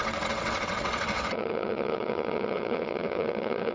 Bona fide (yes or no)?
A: no